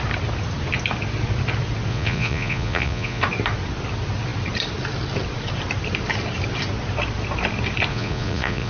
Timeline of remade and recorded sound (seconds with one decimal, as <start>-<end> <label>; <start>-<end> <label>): 0.0-1.9 recorded; 1.9-3.2 remade; 3.2-7.9 recorded; 7.9-8.7 remade